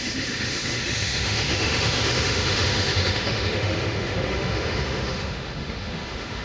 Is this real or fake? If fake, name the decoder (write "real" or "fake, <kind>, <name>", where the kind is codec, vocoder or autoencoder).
fake, autoencoder, DAC-VAE